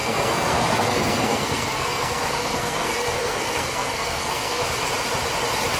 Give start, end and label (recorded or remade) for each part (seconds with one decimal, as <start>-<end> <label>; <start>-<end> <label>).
0.0-4.6 remade; 4.6-5.8 recorded